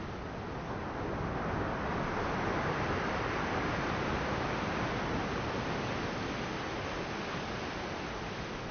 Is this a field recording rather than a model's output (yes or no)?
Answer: yes